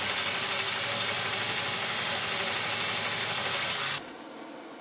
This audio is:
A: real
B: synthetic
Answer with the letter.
A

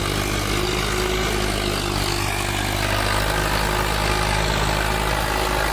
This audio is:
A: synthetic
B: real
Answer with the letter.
B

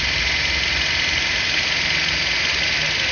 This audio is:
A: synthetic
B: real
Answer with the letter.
B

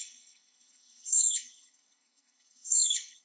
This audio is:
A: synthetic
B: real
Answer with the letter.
A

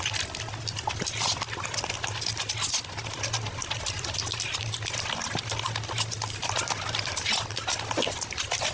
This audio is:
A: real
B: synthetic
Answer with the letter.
A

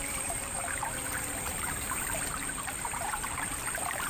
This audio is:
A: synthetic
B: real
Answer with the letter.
A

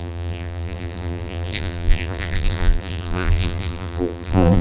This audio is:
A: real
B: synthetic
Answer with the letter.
B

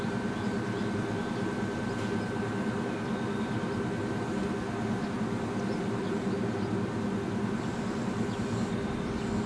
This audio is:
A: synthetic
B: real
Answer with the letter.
B